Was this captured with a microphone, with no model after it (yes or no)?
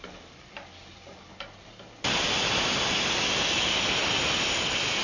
yes